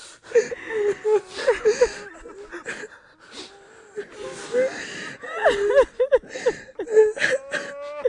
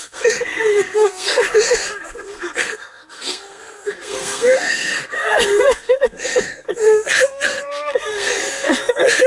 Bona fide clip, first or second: first